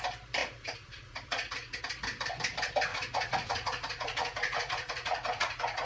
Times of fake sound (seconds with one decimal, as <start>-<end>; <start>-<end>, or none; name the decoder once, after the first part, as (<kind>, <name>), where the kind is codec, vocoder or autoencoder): 0.4-1.8 (vocoder, Vocos); 2.9-5.9